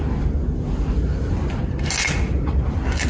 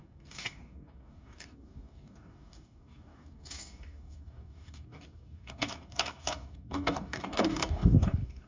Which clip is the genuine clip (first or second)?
first